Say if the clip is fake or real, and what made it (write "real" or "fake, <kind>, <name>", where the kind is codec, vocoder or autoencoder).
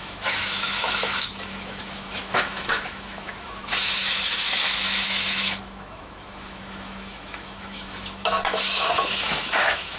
fake, autoencoder, DAC-VAE